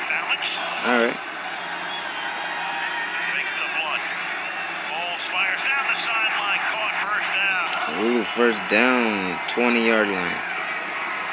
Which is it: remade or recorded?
recorded